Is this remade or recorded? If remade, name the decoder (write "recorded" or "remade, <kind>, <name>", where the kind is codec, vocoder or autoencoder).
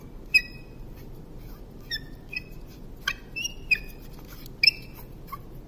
recorded